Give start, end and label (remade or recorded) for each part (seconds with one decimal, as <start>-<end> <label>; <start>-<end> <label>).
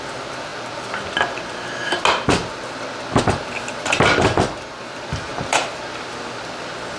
0.0-5.3 recorded; 5.3-5.8 remade; 5.8-7.0 recorded